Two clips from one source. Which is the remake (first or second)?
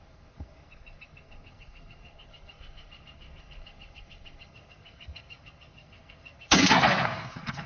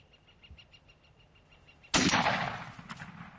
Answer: first